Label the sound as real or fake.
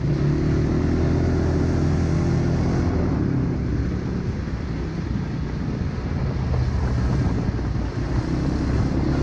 real